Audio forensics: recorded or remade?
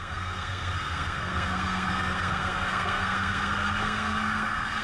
remade